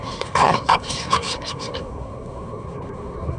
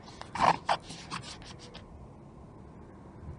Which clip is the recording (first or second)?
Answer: second